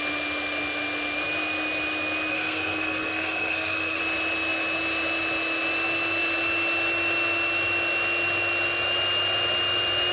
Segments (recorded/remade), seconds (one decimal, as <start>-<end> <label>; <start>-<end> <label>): 0.0-2.3 recorded; 2.3-4.0 remade; 4.0-10.1 recorded